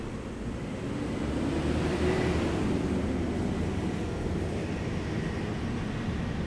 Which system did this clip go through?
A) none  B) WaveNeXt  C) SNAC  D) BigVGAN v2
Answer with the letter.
A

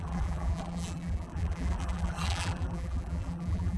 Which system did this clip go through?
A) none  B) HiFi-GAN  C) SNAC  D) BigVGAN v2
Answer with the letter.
D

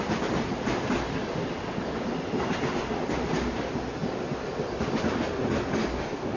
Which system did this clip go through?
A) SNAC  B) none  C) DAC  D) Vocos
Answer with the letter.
B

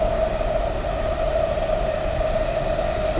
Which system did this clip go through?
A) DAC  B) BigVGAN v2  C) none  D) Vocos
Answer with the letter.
C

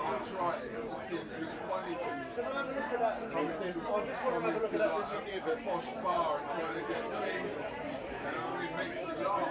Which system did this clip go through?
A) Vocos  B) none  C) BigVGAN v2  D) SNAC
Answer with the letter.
C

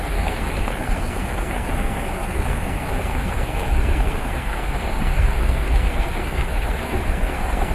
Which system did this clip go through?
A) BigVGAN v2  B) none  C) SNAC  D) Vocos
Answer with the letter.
C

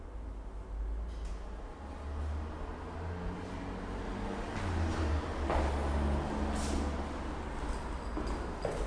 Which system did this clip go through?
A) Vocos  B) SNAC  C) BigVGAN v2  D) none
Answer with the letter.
D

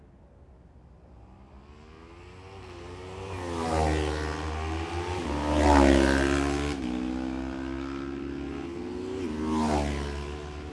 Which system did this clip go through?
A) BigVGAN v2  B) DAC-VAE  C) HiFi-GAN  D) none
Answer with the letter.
D